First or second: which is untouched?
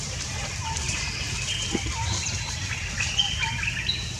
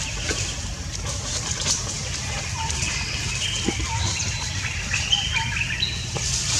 first